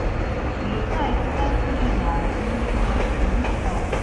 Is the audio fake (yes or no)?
no